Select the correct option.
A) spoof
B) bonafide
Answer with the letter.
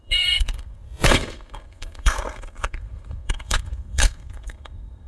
A